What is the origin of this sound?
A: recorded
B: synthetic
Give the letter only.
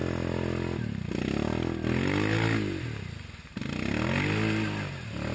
A